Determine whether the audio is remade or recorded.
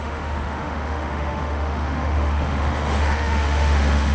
remade